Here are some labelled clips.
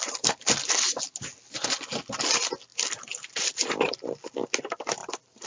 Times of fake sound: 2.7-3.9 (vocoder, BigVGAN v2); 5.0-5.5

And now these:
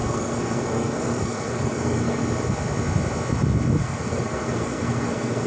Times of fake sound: 0.0-2.2 (codec, SNAC); 3.8-5.5

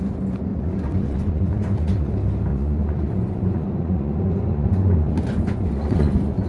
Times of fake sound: 0.5-2.1 (vocoder, Vocos); 2.5-6.5

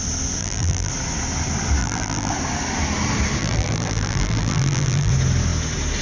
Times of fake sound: 0.4-0.9 (vocoder, BigVGAN v2); 1.8-2.3; 3.4-5.1

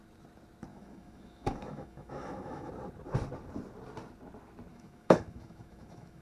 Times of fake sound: 0.7-2.7 (autoencoder, DAC-VAE); 4.7-6.2

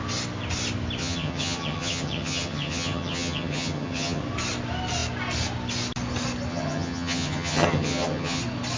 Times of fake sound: 1.0-4.2 (vocoder, HiFi-GAN); 6.5-8.4

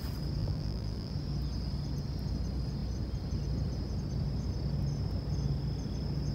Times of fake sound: 0.4-1.1 (vocoder, BigVGAN v2)

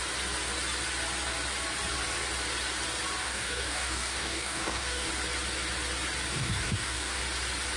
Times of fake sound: 3.2-5.1 (codec, DAC); 6.3-7.2